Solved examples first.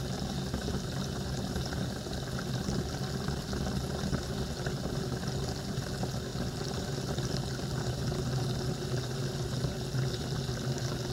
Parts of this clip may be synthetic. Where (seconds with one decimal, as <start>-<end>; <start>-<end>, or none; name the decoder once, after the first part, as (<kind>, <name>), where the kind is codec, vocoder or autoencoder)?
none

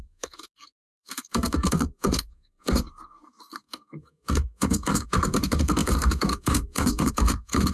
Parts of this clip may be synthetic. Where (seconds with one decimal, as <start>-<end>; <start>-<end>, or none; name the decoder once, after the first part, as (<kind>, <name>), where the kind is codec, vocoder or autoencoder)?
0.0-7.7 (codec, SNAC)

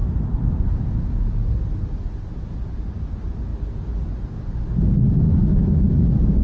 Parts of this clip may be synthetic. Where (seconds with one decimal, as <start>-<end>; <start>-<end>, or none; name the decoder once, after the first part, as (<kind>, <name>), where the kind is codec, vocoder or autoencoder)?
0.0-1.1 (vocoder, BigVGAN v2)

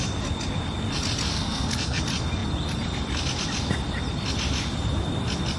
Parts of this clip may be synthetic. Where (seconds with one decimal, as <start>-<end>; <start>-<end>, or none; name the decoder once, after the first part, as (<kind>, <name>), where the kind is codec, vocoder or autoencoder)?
1.3-2.0 (codec, SNAC)

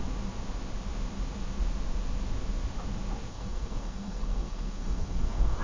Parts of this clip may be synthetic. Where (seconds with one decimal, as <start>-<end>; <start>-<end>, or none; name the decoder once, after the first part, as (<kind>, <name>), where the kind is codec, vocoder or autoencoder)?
3.3-5.6 (codec, SNAC)